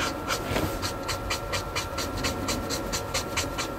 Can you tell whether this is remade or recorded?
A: recorded